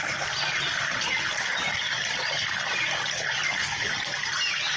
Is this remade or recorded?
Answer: recorded